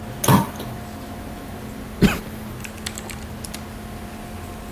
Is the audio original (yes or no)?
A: yes